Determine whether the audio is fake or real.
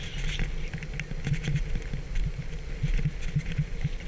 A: real